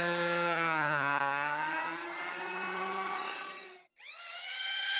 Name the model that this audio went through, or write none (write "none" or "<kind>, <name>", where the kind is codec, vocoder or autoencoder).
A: vocoder, HiFi-GAN